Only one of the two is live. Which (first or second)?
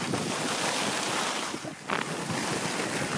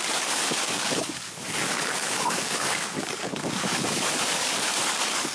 first